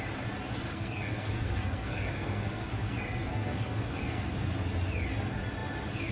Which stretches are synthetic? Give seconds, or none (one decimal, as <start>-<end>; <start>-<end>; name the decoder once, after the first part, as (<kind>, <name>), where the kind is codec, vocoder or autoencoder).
0.7-4.2 (codec, SNAC)